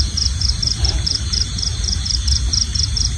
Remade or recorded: remade